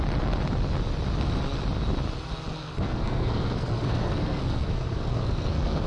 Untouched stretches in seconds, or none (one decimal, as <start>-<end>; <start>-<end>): 0.0-2.5